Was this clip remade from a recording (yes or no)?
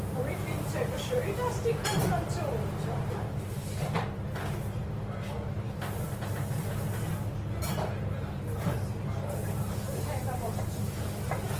yes